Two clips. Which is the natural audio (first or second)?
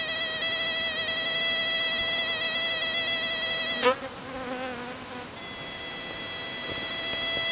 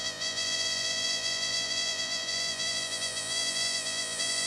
first